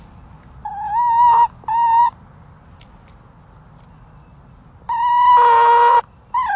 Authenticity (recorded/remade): recorded